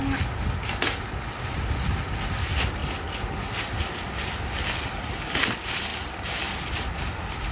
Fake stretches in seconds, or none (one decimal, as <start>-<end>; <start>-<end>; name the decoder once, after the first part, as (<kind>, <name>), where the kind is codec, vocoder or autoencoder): none